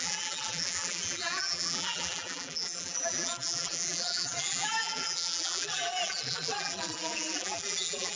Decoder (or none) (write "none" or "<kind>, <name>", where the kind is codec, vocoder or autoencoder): vocoder, BigVGAN v2